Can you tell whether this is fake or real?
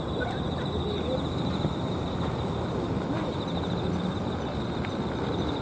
real